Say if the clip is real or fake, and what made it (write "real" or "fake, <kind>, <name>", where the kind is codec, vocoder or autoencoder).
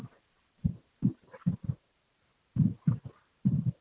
fake, vocoder, BigVGAN v2